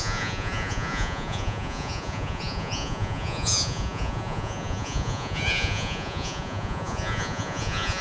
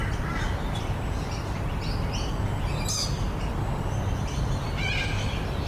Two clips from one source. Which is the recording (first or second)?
second